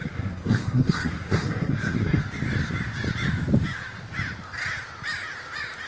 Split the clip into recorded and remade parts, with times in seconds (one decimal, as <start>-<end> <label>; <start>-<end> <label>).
0.0-2.2 remade; 2.2-5.9 recorded